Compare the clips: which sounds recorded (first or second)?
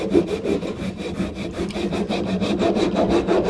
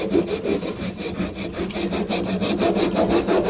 second